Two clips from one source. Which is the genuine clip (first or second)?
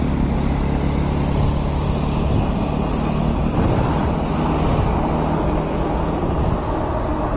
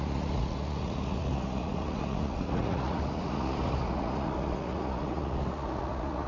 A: first